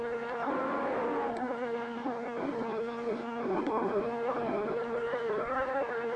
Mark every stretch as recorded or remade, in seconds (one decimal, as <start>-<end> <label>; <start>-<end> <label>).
0.0-0.5 remade; 0.5-1.3 recorded; 1.3-6.2 remade

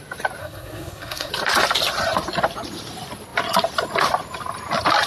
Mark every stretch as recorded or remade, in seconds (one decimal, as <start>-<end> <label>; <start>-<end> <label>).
0.0-0.4 recorded; 0.4-1.3 remade; 1.3-5.1 recorded

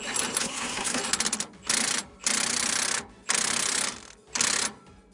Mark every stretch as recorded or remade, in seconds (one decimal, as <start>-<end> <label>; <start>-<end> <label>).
0.0-0.4 recorded; 0.4-1.0 remade; 1.0-5.1 recorded

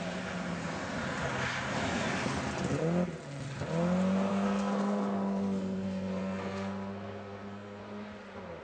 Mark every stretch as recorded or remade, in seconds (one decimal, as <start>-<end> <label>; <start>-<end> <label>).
0.0-4.3 recorded; 4.3-7.8 remade; 7.8-8.6 recorded

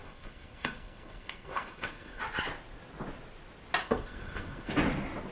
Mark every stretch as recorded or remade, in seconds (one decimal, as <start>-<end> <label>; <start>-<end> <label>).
0.0-2.2 remade; 2.2-3.8 recorded; 3.8-4.7 remade; 4.7-5.3 recorded